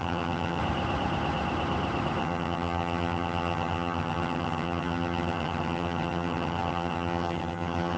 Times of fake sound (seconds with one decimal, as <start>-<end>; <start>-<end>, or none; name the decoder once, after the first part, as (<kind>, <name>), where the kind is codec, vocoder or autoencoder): 0.0-0.6 (vocoder, HiFi-GAN); 2.2-8.0